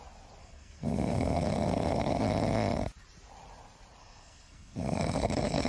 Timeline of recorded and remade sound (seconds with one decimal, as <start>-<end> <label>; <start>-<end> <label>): 0.0-0.4 recorded; 0.4-2.3 remade; 2.3-4.0 recorded; 4.0-5.7 remade